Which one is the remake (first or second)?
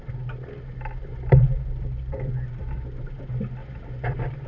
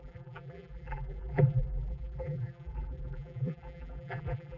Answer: second